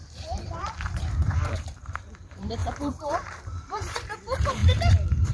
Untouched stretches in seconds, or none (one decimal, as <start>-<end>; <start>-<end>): none